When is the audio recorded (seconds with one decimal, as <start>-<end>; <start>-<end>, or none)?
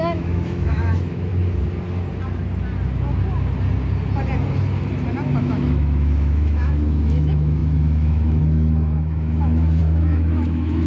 1.3-5.4